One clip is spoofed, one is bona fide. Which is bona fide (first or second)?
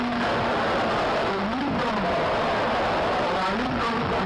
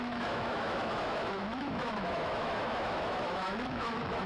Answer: first